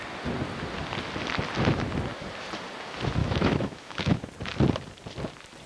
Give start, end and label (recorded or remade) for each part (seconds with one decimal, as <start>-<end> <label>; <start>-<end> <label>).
0.0-3.2 recorded; 3.2-4.3 remade; 4.3-5.7 recorded